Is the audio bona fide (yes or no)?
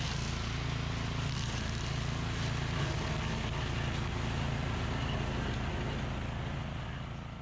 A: yes